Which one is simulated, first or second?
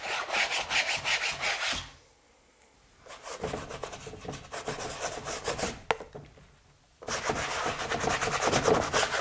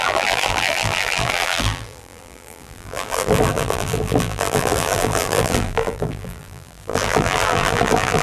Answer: second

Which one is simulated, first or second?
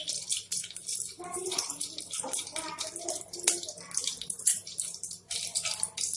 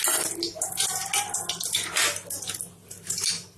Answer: first